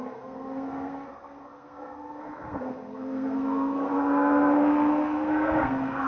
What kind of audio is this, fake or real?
fake